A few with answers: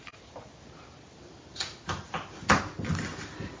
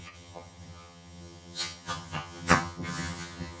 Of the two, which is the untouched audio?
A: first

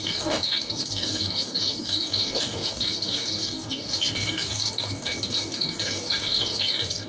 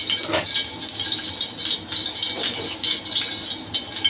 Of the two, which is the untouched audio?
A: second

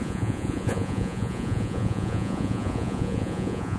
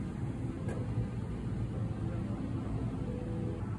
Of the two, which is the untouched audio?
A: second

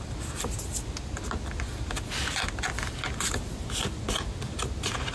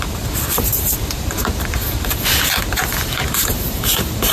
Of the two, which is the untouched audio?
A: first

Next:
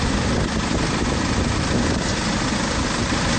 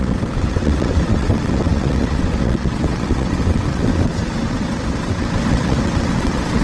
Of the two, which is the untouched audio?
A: first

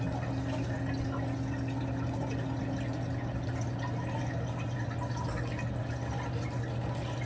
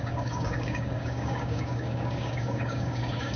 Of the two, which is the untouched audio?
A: first